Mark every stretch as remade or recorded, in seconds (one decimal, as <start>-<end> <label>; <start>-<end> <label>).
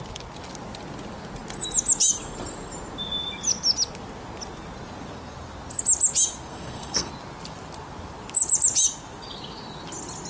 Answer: 0.0-6.5 recorded; 6.5-7.1 remade; 7.1-10.3 recorded